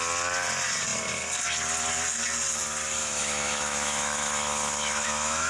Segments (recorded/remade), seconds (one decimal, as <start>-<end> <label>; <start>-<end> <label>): 0.0-3.0 recorded; 3.0-5.5 remade